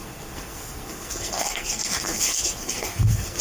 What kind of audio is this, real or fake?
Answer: fake